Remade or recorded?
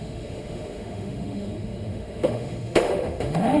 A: remade